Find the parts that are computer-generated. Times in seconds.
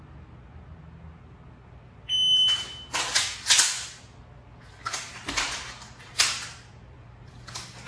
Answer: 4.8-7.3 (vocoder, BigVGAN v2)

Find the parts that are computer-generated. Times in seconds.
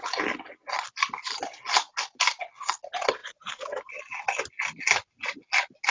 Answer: 3.2-4.0 (vocoder, BigVGAN v2)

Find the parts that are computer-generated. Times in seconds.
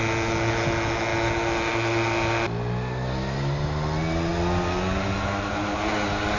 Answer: none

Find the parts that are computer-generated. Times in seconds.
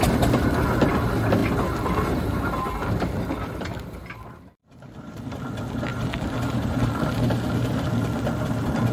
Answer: 4.6-5.2 (vocoder, BigVGAN v2); 5.9-7.8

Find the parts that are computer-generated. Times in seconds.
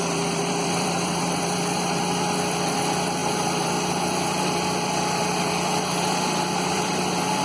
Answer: 0.0-7.4 (vocoder, BigVGAN v2)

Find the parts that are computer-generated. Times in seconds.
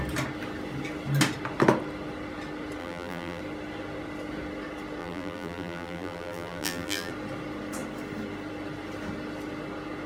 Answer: 2.8-3.4 (vocoder, BigVGAN v2); 5.0-7.1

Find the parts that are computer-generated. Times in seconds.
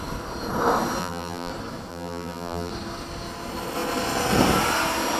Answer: 1.0-1.5 (vocoder, BigVGAN v2); 1.9-2.7